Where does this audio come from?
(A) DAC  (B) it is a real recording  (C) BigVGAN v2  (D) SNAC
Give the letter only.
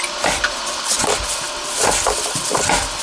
B